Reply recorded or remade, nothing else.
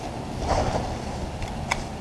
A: recorded